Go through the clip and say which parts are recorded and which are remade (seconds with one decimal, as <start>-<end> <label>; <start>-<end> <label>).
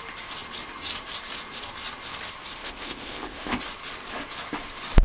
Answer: 0.0-2.6 recorded; 2.6-3.6 remade; 3.6-5.0 recorded